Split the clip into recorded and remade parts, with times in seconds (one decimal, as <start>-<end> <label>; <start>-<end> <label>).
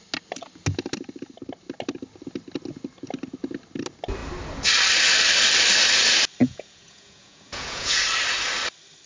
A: 0.0-6.4 recorded; 6.4-8.0 remade; 8.0-9.1 recorded